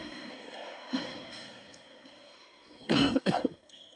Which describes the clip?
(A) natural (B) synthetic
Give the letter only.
B